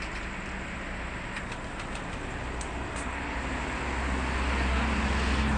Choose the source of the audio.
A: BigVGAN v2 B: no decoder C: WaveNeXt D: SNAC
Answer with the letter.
B